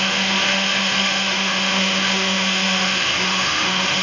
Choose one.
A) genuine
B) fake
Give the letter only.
B